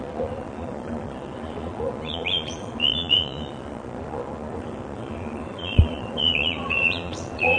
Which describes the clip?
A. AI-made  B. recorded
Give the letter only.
A